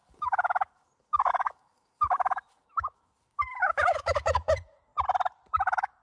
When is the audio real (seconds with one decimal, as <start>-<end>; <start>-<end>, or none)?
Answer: 4.9-5.5